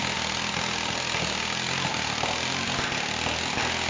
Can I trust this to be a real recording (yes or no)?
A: yes